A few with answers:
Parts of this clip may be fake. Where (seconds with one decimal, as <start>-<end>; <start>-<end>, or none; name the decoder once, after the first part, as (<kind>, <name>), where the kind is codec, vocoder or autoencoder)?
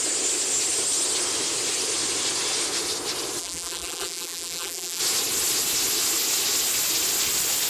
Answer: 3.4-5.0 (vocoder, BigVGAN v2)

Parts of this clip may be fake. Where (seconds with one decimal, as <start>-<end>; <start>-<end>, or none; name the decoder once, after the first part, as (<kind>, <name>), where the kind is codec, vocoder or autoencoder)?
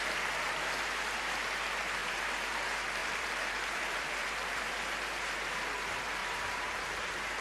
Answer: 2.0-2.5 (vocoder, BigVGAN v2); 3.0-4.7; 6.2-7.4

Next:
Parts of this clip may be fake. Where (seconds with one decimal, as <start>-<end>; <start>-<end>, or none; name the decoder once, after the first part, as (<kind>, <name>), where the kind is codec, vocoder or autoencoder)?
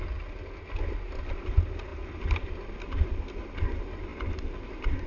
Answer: 4.1-5.1 (vocoder, BigVGAN v2)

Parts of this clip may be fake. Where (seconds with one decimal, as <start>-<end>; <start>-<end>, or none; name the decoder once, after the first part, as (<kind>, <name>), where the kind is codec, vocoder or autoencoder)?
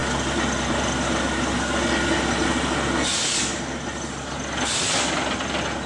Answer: none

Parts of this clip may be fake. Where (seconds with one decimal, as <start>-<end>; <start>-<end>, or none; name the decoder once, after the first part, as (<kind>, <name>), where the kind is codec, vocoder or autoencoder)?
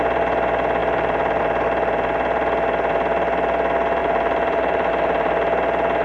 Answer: 0.8-1.4 (vocoder, BigVGAN v2); 4.0-4.9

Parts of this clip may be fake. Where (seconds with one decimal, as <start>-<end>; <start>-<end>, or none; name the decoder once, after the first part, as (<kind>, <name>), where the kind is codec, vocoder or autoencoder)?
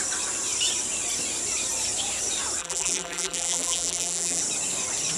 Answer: 2.6-4.4 (vocoder, BigVGAN v2)